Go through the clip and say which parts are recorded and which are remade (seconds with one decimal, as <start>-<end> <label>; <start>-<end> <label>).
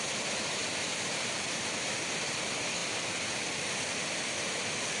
0.0-0.6 recorded; 0.6-2.4 remade; 2.4-5.0 recorded